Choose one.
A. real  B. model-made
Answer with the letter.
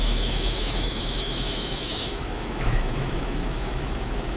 B